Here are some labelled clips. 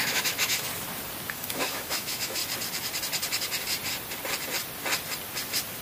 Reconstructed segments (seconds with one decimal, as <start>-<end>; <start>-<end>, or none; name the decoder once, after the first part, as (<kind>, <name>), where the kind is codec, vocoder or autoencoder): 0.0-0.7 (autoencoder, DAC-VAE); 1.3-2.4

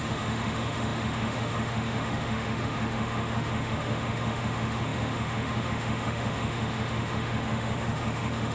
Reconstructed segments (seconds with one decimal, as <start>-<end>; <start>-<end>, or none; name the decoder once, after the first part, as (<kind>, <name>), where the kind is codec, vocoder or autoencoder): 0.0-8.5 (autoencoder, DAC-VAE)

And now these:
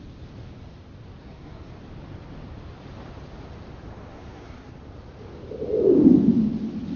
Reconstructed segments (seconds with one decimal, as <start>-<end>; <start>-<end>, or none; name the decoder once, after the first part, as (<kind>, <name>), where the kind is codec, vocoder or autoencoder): 1.2-1.7 (codec, SNAC); 4.1-4.7

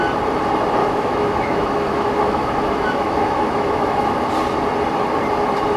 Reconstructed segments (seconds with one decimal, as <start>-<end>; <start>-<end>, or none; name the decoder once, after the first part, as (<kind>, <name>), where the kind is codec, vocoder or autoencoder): 0.8-4.3 (autoencoder, DAC-VAE)

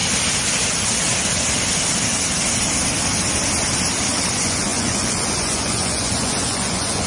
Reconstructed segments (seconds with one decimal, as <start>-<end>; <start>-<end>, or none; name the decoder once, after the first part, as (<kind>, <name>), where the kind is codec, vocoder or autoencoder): 4.3-7.1 (vocoder, Vocos)

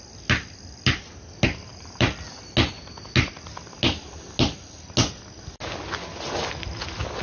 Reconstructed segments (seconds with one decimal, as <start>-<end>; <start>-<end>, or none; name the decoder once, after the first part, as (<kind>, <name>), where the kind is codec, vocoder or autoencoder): 1.7-2.4 (vocoder, BigVGAN v2)

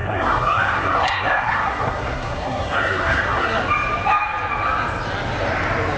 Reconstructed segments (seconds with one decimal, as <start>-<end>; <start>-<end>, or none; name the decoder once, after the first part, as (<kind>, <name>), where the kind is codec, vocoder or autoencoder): 0.0-3.6 (codec, SNAC)